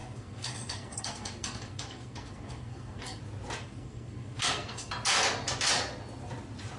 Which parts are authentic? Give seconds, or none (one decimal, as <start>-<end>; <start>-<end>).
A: 3.2-3.6; 4.9-6.8